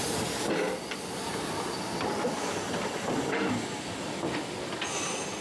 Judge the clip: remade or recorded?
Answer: recorded